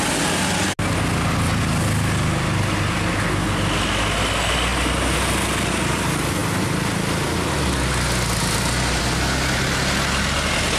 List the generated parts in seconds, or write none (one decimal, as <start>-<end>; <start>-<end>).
none